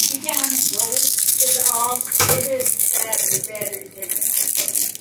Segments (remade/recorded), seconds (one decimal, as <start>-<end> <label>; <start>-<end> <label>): 0.0-2.9 remade; 2.9-5.0 recorded